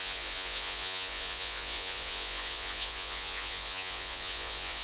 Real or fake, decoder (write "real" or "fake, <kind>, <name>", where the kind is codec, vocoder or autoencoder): fake, vocoder, Vocos